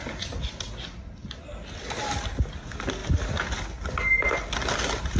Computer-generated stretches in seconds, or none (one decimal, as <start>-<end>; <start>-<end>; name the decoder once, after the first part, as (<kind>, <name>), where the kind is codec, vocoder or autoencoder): none